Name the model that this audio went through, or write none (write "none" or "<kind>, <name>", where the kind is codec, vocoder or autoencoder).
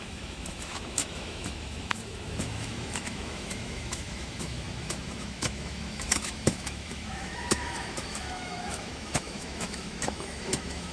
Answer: autoencoder, DAC-VAE